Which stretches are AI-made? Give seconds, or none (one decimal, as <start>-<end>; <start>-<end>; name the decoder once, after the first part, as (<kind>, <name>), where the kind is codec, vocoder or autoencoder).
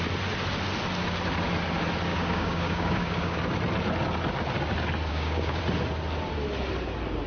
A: 2.1-3.4 (codec, DAC); 5.1-5.6